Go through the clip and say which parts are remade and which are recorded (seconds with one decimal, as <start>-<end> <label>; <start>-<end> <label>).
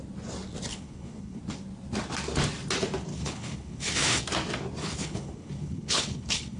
0.0-0.7 recorded; 0.7-1.4 remade; 1.4-3.1 recorded; 3.1-4.2 remade; 4.2-4.8 recorded; 4.8-6.6 remade